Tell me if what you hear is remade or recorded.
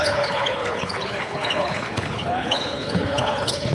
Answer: remade